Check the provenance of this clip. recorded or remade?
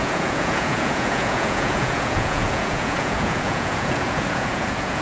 remade